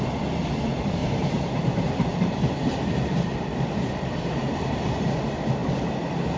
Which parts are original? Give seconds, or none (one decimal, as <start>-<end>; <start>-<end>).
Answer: 0.0-1.0; 4.3-6.4